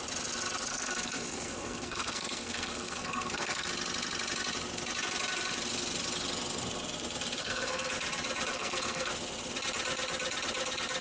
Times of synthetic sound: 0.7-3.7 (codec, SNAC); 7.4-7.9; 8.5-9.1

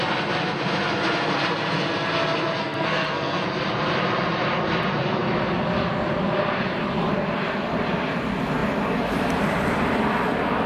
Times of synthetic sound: 2.6-3.4 (codec, SNAC)

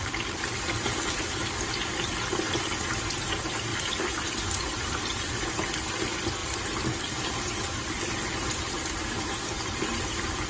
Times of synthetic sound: 1.9-2.7 (vocoder, BigVGAN v2); 3.7-5.0; 6.4-8.6